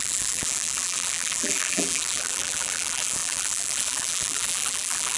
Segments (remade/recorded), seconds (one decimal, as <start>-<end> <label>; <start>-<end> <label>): 0.0-5.2 remade